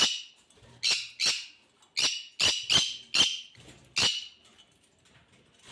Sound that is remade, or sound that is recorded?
recorded